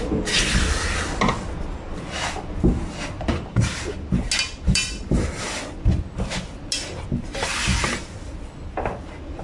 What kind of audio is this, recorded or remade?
recorded